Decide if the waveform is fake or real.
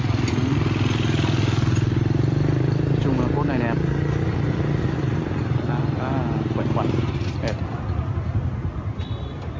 real